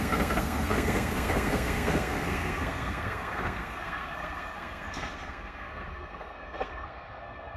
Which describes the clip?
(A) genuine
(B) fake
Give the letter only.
B